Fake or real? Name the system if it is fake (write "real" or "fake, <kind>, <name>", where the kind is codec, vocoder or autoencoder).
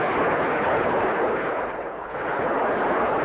fake, codec, HILCodec